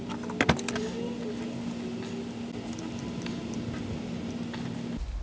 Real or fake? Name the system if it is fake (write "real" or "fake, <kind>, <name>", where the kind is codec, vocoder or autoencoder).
real